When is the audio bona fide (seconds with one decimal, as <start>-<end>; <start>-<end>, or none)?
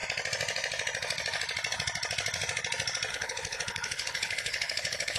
0.0-3.1